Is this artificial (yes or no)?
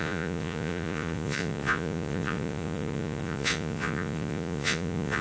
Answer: yes